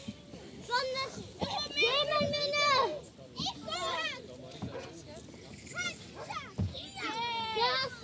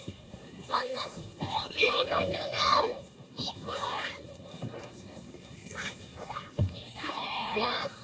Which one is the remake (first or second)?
second